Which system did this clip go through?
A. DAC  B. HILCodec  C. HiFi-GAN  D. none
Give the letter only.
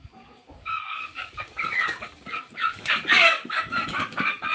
A